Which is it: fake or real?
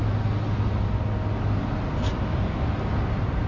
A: real